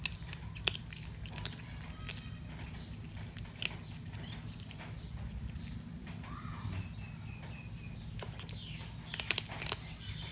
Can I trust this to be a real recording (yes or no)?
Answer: yes